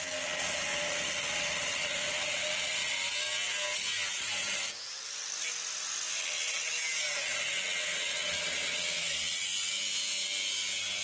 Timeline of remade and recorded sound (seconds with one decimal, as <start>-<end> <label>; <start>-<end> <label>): 0.0-11.0 recorded